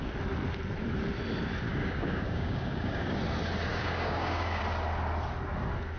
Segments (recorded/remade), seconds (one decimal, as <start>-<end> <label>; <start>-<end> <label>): 0.0-1.7 recorded; 1.7-3.2 remade; 3.2-3.7 recorded; 3.7-4.6 remade; 4.6-6.0 recorded

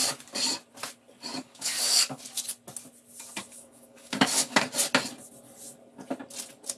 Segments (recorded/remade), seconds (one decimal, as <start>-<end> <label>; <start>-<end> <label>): 0.0-1.3 recorded; 1.3-2.2 remade; 2.2-3.4 recorded; 3.4-4.6 remade; 4.6-6.8 recorded

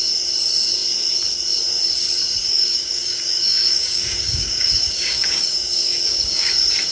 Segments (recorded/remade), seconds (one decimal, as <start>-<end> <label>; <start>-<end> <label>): 0.0-2.4 recorded; 2.4-6.5 remade; 6.5-6.9 recorded

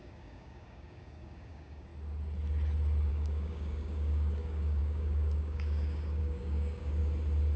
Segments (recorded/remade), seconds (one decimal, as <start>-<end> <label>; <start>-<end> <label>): 0.0-1.9 remade; 1.9-3.1 recorded; 3.1-7.0 remade; 7.0-7.6 recorded